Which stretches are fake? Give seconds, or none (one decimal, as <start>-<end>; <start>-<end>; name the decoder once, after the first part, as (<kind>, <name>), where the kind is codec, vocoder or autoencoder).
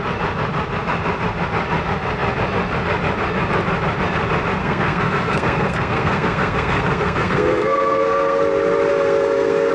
4.6-8.4 (codec, SNAC); 8.9-9.7